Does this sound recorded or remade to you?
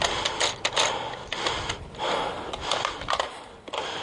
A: recorded